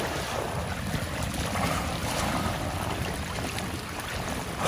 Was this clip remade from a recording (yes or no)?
no